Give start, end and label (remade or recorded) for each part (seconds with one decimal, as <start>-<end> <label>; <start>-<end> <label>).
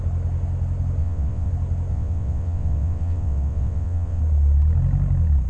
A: 0.0-1.0 recorded; 1.0-1.5 remade; 1.5-1.9 recorded; 1.9-4.2 remade; 4.2-5.5 recorded